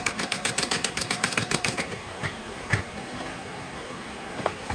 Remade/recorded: remade